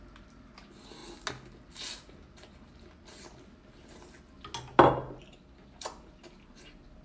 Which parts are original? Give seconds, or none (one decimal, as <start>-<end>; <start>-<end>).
0.0-7.0